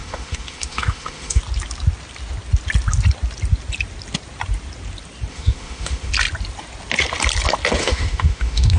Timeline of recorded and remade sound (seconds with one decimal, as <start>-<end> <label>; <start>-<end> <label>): 0.0-1.4 remade; 1.4-5.3 recorded; 5.3-6.1 remade; 6.1-7.8 recorded; 7.8-8.8 remade